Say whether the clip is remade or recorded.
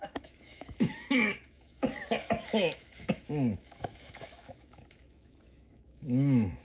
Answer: remade